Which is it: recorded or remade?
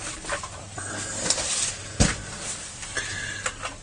recorded